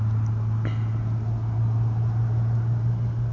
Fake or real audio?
real